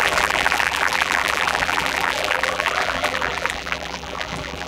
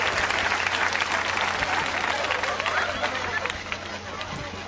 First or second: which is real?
second